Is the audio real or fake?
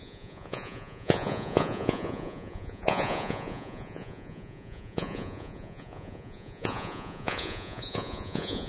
fake